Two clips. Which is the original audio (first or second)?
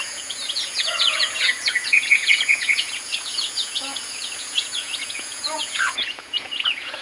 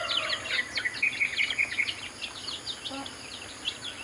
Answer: second